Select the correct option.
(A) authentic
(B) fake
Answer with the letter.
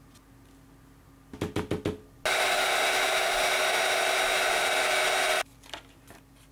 A